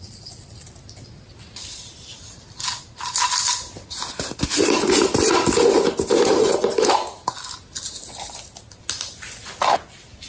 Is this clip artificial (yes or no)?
no